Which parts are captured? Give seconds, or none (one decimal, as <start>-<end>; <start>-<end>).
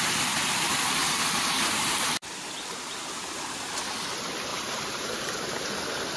0.0-1.0; 2.8-4.5; 5.7-6.2